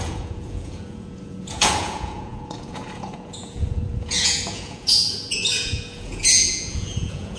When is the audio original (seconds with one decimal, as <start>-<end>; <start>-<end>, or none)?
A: none